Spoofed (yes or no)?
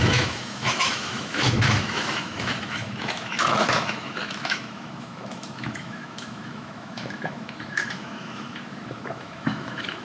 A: yes